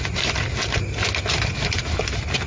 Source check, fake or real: real